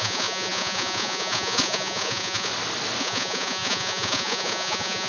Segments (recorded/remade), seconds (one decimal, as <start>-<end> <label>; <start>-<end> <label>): 0.0-2.5 remade; 2.5-3.0 recorded; 3.0-5.1 remade